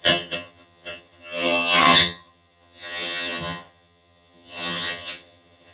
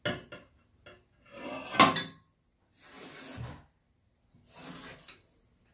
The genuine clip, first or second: second